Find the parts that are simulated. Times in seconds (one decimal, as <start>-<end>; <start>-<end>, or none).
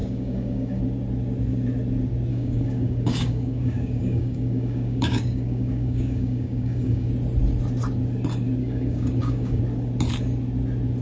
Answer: 0.0-0.8; 2.3-7.1; 8.6-9.6